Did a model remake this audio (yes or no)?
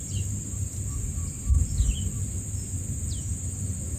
no